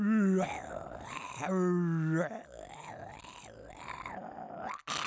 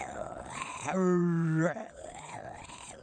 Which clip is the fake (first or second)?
second